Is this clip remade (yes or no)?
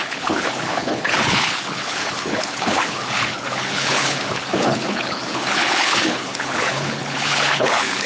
yes